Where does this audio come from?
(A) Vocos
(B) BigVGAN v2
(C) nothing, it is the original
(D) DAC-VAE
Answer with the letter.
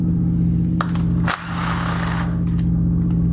C